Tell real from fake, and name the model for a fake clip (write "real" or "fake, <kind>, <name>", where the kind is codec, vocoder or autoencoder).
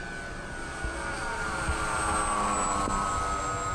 real